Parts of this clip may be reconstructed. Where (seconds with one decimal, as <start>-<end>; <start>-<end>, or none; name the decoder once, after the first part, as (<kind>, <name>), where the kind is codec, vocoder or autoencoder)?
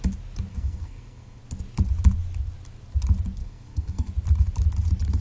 0.5-1.4 (codec, SNAC); 3.4-4.1